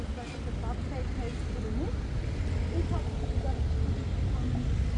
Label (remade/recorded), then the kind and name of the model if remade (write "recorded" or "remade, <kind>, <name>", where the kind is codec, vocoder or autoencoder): recorded